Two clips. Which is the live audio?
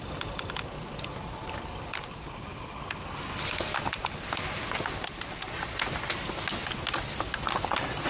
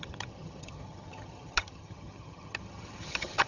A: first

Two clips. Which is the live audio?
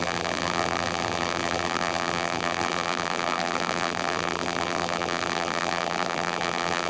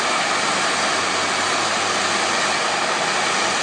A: second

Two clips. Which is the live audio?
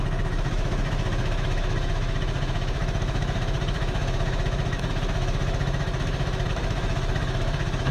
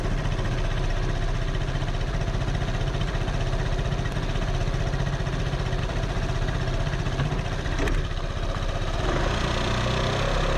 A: second